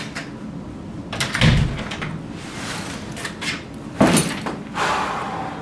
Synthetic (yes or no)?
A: no